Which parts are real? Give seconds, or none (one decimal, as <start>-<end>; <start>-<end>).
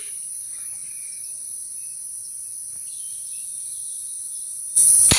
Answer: 0.0-5.2